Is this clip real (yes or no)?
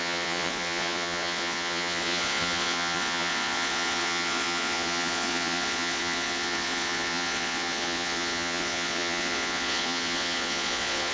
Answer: no